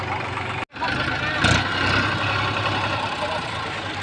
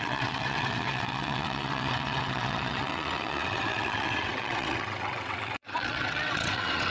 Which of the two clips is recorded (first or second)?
first